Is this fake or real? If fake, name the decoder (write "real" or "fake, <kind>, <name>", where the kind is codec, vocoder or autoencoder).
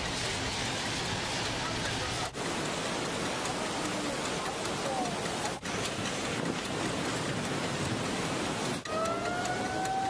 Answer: real